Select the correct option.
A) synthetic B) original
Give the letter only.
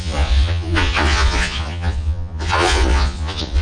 A